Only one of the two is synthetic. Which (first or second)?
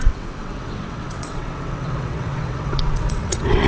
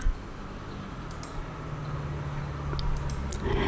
first